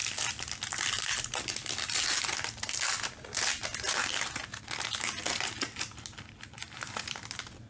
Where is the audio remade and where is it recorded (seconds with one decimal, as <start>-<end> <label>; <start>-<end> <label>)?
0.0-7.7 recorded